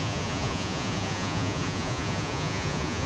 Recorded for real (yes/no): no